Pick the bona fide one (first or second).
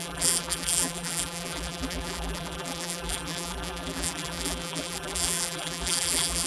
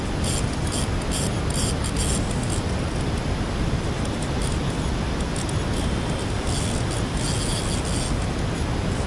second